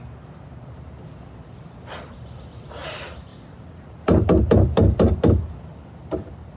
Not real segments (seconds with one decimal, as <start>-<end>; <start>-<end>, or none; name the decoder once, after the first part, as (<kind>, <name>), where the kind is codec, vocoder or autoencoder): none